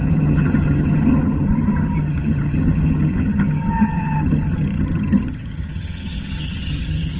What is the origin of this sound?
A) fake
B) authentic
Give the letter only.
A